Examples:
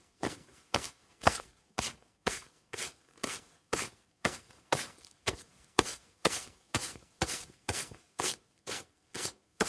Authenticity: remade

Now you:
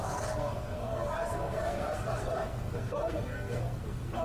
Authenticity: remade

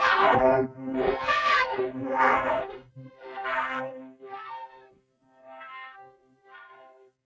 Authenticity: remade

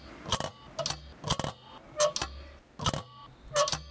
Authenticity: recorded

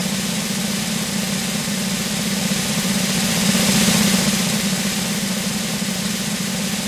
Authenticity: recorded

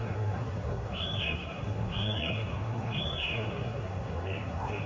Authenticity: remade